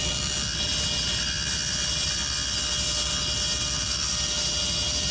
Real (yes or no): yes